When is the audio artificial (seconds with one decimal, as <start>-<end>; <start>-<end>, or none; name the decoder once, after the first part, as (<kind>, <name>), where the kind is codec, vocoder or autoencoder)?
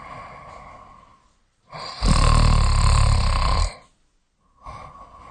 1.1-3.8 (vocoder, BigVGAN v2)